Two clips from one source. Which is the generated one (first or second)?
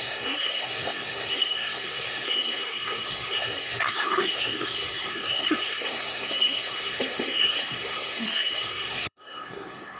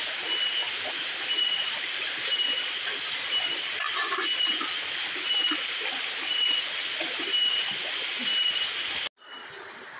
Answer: first